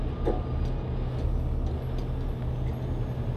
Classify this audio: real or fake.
real